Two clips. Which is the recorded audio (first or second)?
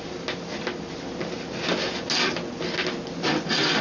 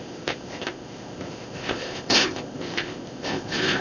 first